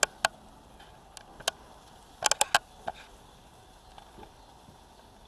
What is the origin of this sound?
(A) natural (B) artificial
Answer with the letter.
A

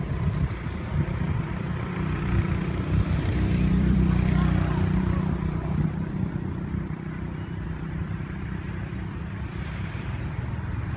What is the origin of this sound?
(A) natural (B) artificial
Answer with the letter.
B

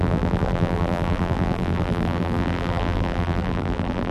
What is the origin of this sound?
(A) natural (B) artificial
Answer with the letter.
B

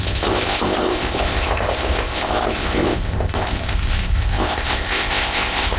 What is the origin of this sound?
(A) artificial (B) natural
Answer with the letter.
A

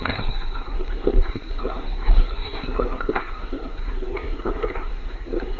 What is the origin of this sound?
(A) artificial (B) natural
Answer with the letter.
A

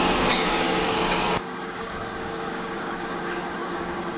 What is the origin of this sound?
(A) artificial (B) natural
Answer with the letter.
A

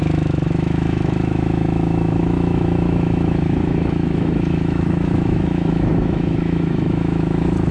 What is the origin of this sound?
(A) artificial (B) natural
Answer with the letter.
A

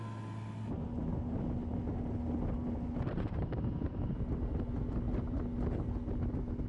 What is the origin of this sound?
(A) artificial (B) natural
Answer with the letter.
B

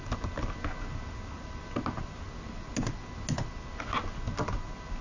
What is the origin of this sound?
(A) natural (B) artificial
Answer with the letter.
A